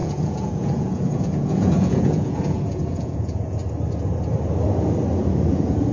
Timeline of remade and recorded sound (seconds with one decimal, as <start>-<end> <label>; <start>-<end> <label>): 0.0-3.6 remade; 3.6-5.5 recorded; 5.5-5.9 remade